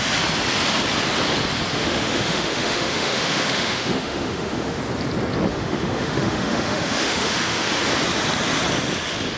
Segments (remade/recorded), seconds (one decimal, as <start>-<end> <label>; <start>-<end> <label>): 0.0-1.7 recorded; 1.7-4.8 remade; 4.8-5.5 recorded; 5.5-7.8 remade; 7.8-9.4 recorded